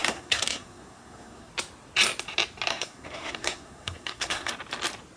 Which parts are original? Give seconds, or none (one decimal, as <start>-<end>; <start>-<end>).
1.5-2.7; 4.5-5.2